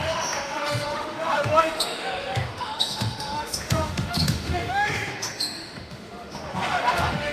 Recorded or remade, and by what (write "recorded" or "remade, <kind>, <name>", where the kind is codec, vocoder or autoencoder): remade, autoencoder, DAC-VAE